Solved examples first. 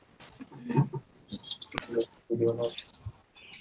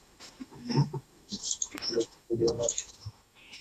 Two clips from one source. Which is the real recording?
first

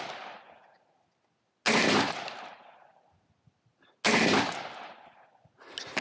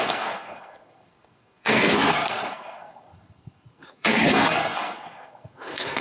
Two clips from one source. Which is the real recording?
first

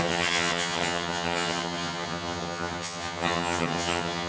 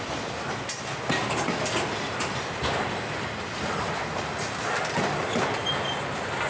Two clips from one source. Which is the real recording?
second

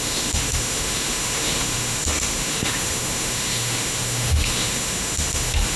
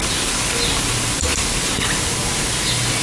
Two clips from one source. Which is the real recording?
second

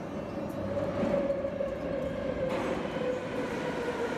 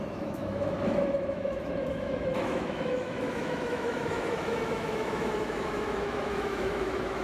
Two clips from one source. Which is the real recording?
first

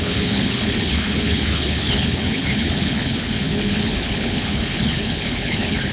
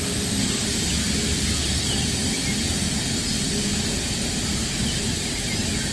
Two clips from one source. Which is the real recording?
second